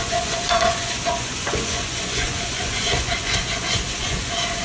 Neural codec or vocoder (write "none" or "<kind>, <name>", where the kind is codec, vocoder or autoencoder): vocoder, Vocos